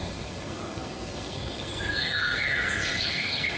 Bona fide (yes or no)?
no